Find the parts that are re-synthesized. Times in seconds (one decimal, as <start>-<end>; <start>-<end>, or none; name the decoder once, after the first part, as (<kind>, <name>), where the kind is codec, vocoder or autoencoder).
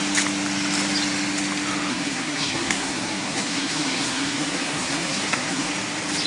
1.9-5.7 (codec, SNAC)